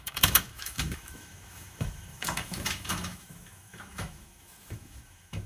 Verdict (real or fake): fake